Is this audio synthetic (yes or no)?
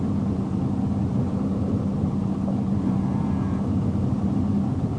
no